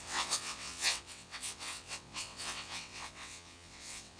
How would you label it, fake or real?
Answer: fake